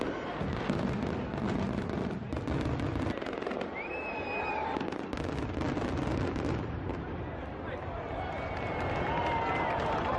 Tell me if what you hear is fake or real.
real